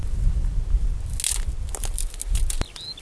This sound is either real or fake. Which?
real